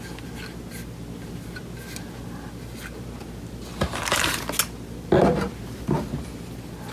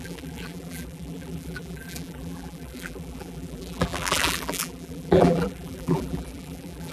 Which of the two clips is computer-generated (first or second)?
second